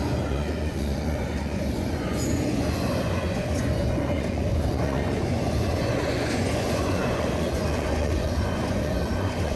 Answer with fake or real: fake